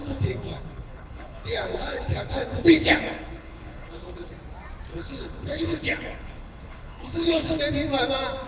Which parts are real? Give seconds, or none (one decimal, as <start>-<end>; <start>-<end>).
4.3-4.9; 7.6-8.5